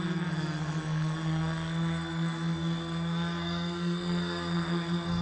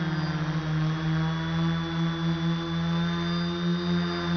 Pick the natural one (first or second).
second